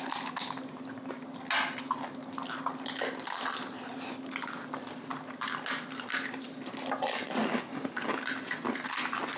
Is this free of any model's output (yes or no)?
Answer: yes